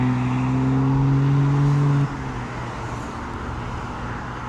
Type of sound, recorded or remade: recorded